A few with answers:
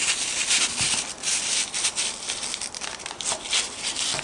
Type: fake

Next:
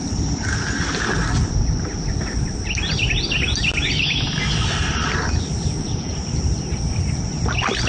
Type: real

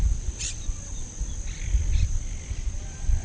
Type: fake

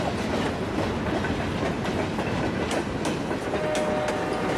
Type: real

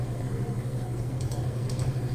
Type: fake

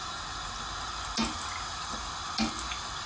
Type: real